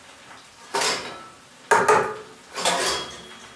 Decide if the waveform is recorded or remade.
recorded